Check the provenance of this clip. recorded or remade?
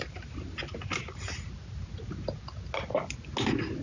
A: recorded